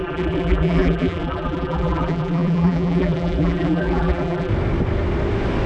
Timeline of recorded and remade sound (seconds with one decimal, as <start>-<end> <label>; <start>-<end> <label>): 0.0-4.5 remade; 4.5-5.7 recorded